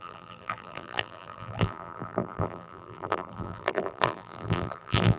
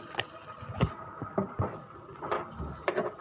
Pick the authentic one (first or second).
second